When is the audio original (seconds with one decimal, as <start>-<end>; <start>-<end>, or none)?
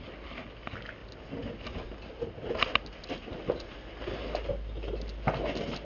0.0-5.8